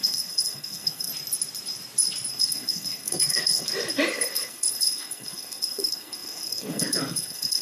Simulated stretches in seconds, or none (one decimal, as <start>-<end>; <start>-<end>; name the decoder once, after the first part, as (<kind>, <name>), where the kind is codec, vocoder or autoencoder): 0.0-1.1 (codec, SNAC); 2.3-3.7; 4.3-7.6